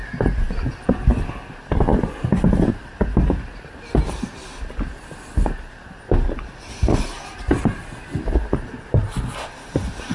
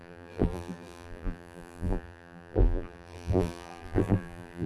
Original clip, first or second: first